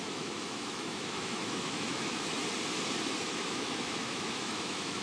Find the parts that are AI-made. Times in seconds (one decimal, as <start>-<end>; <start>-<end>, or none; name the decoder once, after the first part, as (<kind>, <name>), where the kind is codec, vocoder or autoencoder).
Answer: 0.0-2.4 (autoencoder, DAC-VAE); 3.2-5.0